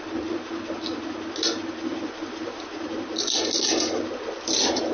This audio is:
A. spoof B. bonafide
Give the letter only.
B